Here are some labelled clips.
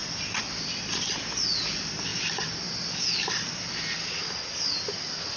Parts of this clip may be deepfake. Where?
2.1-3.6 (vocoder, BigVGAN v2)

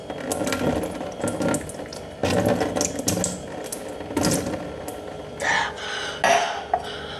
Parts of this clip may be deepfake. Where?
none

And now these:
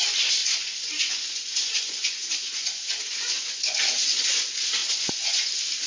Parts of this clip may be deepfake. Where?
0.4-3.9 (vocoder, Vocos); 4.8-5.5

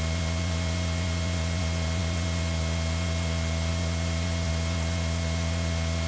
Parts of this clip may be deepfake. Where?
none